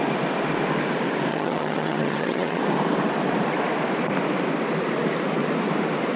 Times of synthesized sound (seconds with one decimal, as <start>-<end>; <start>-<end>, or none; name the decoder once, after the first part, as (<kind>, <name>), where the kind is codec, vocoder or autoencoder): 1.3-2.6 (vocoder, HiFi-GAN)